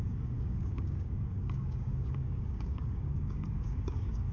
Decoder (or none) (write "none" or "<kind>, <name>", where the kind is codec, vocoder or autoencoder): codec, DAC